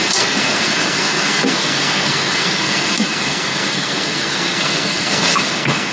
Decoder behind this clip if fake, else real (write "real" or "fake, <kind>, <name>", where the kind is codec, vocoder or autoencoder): fake, codec, SNAC